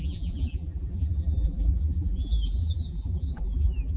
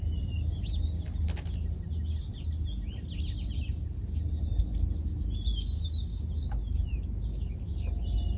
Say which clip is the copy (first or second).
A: first